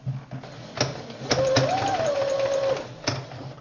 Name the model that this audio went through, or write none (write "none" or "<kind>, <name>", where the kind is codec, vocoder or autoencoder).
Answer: none